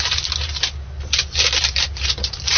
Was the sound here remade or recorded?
recorded